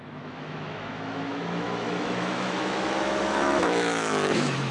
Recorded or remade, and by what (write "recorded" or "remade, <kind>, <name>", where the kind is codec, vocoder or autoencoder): remade, autoencoder, DAC-VAE